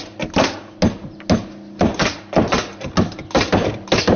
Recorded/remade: recorded